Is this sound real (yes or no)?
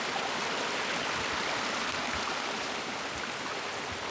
yes